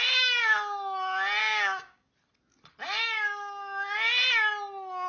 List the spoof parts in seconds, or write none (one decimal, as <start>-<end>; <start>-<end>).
1.4-2.1